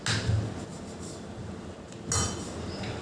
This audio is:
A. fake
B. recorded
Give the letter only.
B